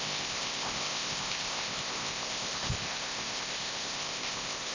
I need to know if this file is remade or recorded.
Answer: remade